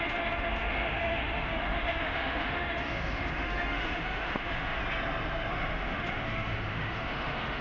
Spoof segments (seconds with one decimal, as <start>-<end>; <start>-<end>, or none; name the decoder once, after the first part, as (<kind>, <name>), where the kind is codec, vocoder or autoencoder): 0.0-4.8 (autoencoder, DAC-VAE); 5.5-7.6